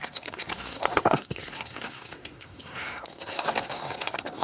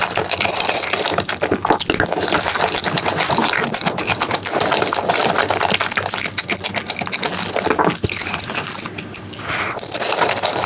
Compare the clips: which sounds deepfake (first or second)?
first